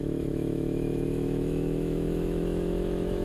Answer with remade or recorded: remade